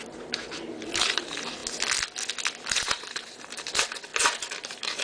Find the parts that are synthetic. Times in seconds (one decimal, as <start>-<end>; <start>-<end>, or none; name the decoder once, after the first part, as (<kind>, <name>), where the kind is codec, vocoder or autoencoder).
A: 0.0-1.6 (vocoder, BigVGAN v2); 2.7-5.0